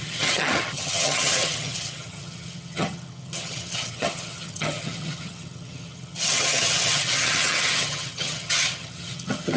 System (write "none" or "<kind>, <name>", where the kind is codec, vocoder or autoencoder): vocoder, HiFi-GAN